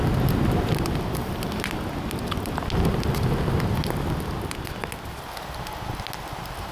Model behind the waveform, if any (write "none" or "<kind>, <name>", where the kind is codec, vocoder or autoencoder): none